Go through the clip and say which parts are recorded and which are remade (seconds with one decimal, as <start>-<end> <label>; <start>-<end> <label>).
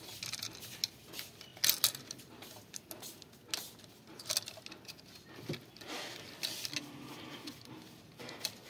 0.0-8.7 recorded